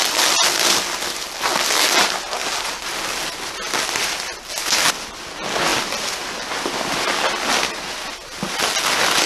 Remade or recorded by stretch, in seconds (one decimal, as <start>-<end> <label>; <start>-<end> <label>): 0.0-5.7 recorded; 5.7-6.5 remade; 6.5-9.3 recorded